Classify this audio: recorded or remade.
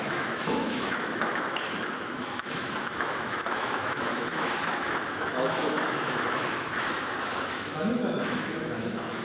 remade